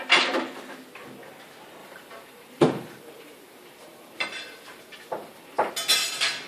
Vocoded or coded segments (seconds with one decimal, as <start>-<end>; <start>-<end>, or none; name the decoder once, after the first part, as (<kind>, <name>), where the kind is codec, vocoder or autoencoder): 1.8-5.7 (vocoder, BigVGAN v2)

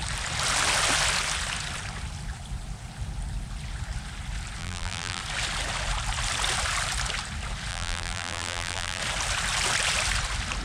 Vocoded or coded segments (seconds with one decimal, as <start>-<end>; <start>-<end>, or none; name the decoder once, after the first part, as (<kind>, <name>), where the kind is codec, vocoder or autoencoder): 4.6-5.2 (vocoder, BigVGAN v2); 7.7-9.0

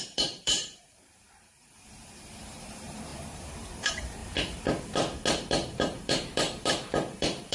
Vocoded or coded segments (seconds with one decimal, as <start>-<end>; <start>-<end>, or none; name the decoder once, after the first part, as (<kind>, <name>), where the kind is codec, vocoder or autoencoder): 0.0-4.2 (vocoder, BigVGAN v2); 5.5-7.5

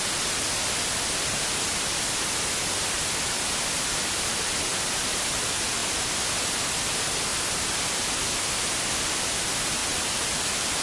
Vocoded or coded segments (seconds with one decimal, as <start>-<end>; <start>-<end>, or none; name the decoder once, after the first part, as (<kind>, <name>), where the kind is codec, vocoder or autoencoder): 9.8-10.8 (vocoder, BigVGAN v2)

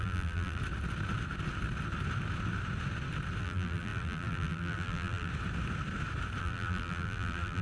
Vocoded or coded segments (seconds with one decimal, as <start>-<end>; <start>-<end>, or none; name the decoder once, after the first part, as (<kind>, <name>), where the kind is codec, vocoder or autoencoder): 0.0-0.6 (vocoder, BigVGAN v2); 3.4-5.3; 6.4-7.6

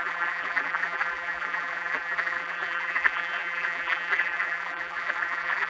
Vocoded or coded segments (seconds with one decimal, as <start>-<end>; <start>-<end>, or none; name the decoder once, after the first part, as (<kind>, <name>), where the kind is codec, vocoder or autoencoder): 0.0-5.7 (vocoder, BigVGAN v2)

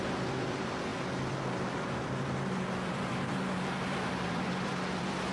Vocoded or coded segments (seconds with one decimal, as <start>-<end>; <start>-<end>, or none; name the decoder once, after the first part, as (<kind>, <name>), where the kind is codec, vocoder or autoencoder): 0.0-5.3 (vocoder, BigVGAN v2)